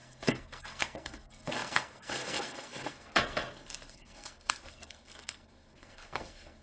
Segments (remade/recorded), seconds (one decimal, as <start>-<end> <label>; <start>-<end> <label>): 0.0-6.6 remade